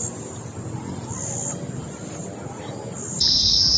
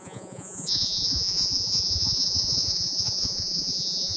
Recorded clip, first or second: first